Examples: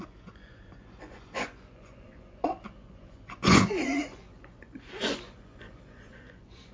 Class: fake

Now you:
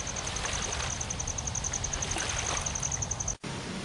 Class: real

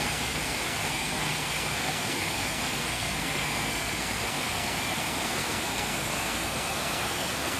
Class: fake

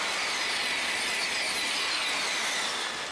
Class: real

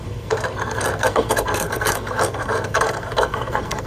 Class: fake